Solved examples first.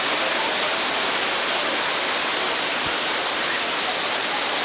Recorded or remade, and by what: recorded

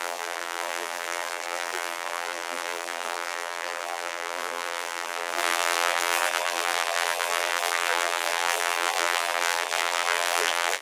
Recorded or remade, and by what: remade, vocoder, BigVGAN v2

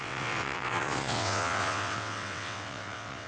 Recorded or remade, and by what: remade, vocoder, WaveNeXt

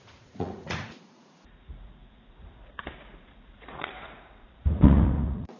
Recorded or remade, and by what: remade, vocoder, Vocos